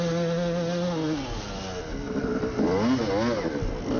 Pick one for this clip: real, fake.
real